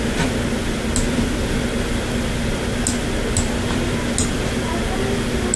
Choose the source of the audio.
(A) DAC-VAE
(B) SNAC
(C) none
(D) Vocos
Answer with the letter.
C